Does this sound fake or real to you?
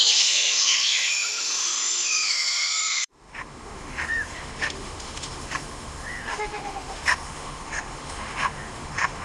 fake